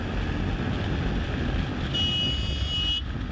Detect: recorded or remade recorded